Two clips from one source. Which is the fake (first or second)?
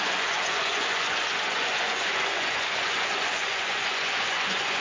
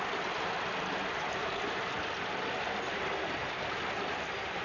first